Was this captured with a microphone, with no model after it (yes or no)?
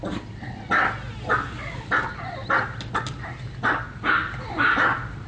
yes